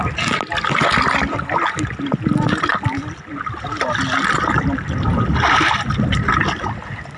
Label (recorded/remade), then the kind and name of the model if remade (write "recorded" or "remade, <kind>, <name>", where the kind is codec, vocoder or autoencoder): recorded